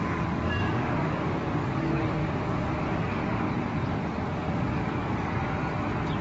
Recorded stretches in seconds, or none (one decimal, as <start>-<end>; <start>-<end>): 2.2-2.8; 3.2-4.2; 5.4-6.2